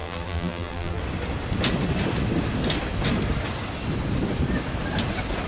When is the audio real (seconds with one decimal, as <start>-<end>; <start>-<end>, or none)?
1.0-5.5